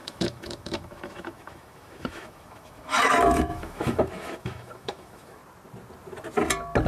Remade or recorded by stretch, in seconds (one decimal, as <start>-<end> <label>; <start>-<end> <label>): 0.0-5.4 remade; 5.4-6.9 recorded

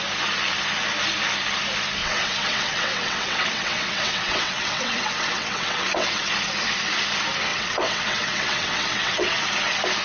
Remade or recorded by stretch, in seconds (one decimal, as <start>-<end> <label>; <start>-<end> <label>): 0.0-2.0 recorded; 2.0-6.3 remade; 6.3-7.5 recorded; 7.5-9.4 remade; 9.4-10.0 recorded

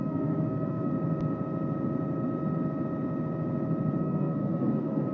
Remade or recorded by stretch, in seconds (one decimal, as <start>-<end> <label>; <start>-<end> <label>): 0.0-0.9 remade; 0.9-4.0 recorded; 4.0-5.1 remade

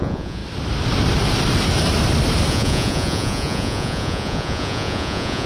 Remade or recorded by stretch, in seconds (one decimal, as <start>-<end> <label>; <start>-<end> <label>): 0.0-0.4 remade; 0.4-2.5 recorded; 2.5-5.5 remade

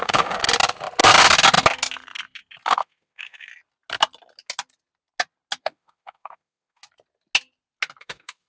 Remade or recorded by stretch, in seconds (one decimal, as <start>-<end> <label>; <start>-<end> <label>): 0.0-0.4 remade; 0.4-2.7 recorded; 2.7-3.5 remade; 3.5-5.6 recorded; 5.6-6.8 remade; 6.8-8.0 recorded; 8.0-8.5 remade